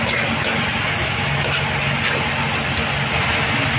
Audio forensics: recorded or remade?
recorded